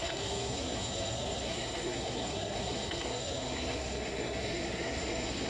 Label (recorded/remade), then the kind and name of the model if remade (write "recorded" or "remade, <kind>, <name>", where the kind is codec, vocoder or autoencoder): remade, codec, SNAC